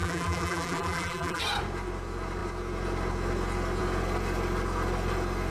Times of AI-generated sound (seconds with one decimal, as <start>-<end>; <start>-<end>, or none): 0.0-1.4

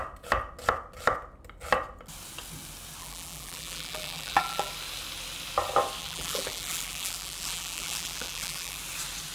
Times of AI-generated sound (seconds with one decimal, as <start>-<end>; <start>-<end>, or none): 3.0-4.7; 6.0-8.8

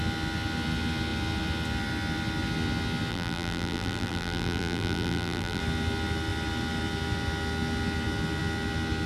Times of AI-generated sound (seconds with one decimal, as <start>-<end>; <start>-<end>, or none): 3.1-5.6

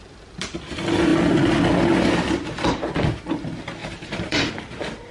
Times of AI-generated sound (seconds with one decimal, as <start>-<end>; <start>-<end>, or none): 3.8-4.5

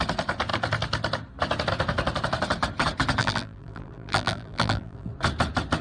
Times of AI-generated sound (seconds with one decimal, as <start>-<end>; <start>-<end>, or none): 3.2-5.1

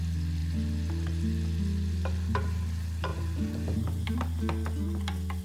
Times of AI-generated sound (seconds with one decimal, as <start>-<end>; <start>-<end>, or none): 3.1-4.1